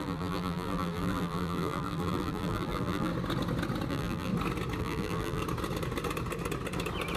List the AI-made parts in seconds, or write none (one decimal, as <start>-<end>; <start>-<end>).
0.0-3.1; 3.9-4.3; 4.8-5.4